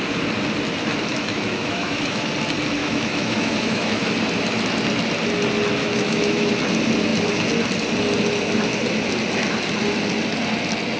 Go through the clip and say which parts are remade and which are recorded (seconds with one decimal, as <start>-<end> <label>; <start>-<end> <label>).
0.0-1.1 recorded; 1.1-2.3 remade; 2.3-2.8 recorded; 2.8-4.1 remade; 4.1-5.8 recorded; 5.8-6.5 remade; 6.5-11.0 recorded